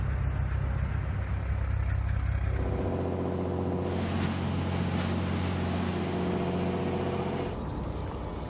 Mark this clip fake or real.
real